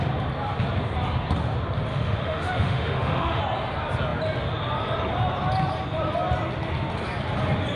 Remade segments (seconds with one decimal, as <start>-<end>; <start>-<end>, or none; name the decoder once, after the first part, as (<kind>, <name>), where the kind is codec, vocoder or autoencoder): 1.9-3.4 (autoencoder, DAC-VAE)